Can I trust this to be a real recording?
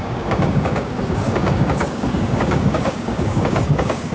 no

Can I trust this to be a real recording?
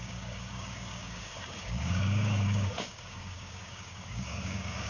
no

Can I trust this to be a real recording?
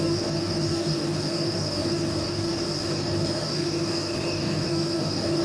no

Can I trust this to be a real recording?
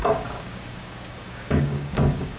no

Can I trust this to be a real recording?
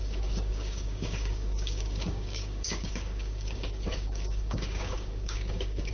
no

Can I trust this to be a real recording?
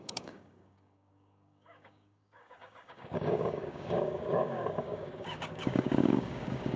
no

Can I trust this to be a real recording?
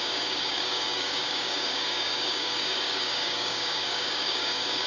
no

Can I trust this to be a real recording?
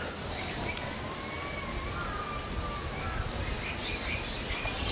yes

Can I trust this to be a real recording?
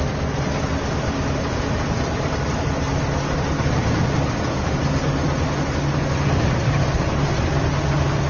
yes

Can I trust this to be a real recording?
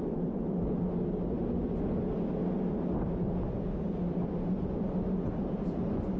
yes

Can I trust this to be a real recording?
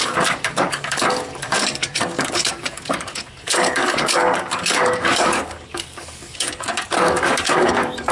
no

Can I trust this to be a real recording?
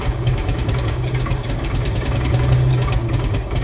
no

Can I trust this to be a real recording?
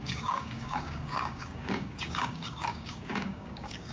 no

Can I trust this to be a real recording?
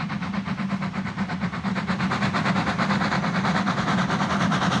yes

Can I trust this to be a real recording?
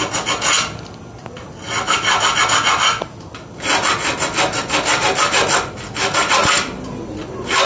yes